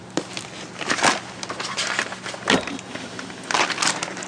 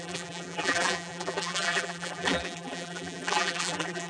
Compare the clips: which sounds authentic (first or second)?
first